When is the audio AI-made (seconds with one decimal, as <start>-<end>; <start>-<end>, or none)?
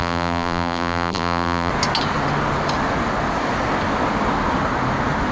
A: 0.0-1.7